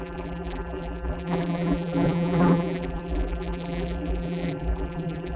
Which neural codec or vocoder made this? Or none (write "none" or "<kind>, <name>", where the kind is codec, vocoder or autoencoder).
vocoder, BigVGAN v2